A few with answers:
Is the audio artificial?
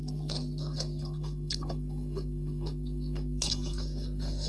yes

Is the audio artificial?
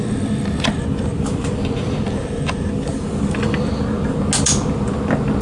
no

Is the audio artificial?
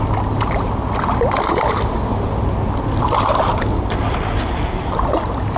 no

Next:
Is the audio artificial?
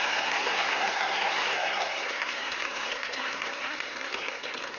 yes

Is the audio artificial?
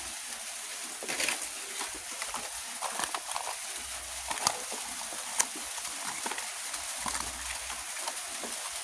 no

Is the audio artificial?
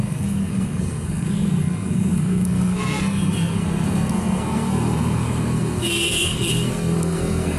yes